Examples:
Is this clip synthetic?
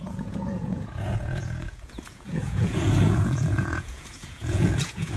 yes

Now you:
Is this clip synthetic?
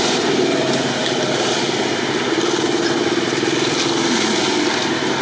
no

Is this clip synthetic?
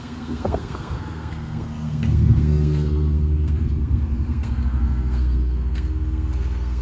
yes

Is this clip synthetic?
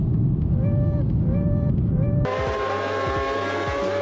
no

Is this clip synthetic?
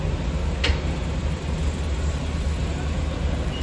no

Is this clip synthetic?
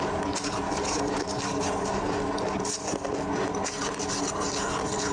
no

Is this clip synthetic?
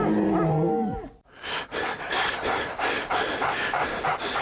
no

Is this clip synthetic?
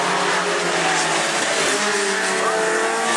no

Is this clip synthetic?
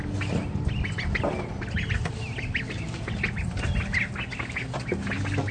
no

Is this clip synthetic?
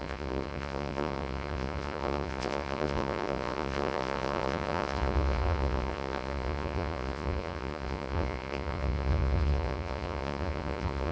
yes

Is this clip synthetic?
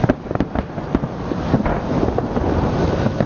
no